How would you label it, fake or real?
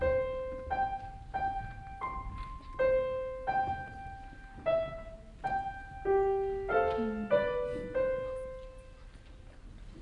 real